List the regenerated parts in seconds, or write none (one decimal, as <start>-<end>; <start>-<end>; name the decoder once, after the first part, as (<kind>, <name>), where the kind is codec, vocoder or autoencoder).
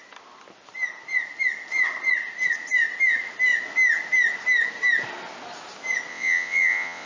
6.1-7.1 (vocoder, WaveNeXt)